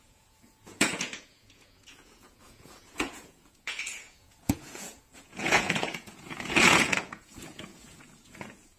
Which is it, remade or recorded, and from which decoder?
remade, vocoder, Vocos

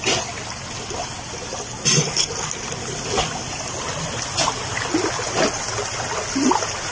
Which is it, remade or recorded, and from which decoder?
recorded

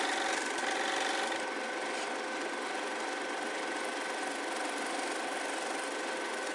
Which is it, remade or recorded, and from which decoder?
recorded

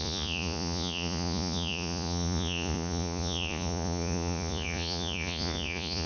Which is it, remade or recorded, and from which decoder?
remade, vocoder, Vocos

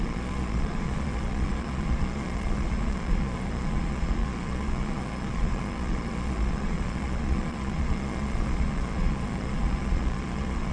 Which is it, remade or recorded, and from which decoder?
remade, vocoder, Vocos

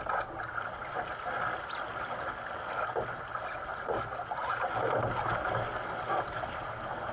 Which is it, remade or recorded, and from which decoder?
recorded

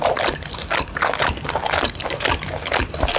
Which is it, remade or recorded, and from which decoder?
recorded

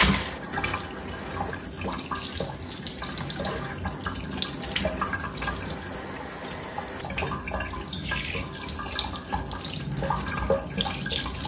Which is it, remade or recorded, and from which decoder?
recorded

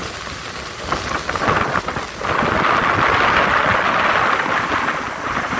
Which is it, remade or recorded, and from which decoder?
recorded